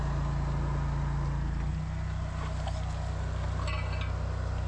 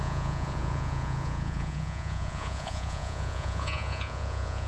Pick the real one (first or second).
first